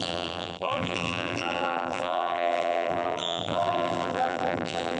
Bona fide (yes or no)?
no